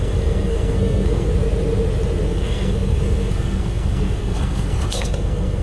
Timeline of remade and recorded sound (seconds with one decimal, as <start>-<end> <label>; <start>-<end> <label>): 0.0-1.3 remade; 1.3-2.3 recorded; 2.3-5.6 remade